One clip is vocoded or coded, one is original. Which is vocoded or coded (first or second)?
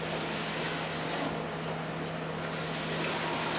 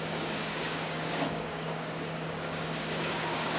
second